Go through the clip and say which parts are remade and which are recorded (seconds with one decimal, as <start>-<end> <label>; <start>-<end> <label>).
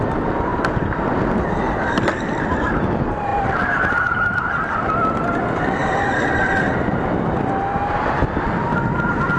0.0-3.3 recorded; 3.3-4.5 remade; 4.5-5.8 recorded; 5.8-6.4 remade; 6.4-9.4 recorded